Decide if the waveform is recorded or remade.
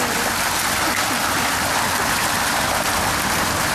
recorded